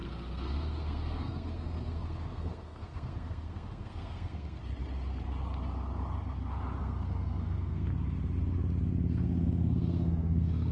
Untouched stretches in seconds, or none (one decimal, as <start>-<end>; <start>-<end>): 4.6-6.8; 7.9-9.1